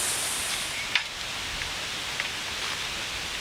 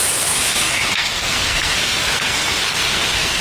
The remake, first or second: second